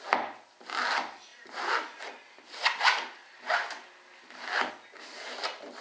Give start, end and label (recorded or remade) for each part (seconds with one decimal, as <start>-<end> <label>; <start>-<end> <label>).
0.0-5.8 recorded